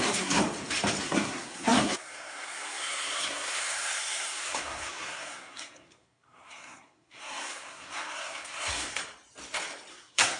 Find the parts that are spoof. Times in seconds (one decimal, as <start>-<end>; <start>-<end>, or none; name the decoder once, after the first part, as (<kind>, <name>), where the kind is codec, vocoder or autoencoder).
0.0-0.4 (codec, SNAC); 1.0-9.0; 9.9-10.4